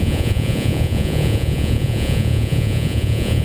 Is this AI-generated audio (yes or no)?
yes